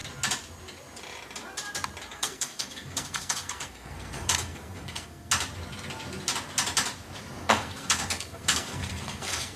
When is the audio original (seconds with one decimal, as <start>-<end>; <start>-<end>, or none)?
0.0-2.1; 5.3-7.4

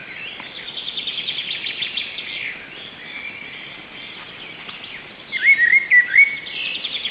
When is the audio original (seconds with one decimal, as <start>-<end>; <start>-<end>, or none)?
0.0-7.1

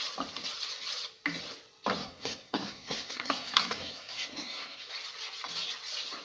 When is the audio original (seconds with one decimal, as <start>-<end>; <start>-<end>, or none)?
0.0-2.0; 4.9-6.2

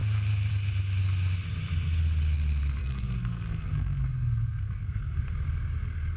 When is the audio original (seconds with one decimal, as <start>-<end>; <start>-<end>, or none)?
0.0-2.8; 5.2-6.2

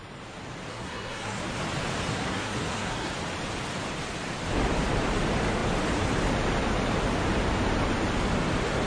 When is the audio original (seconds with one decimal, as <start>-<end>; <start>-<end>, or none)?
0.0-0.7; 1.4-2.1; 3.1-8.9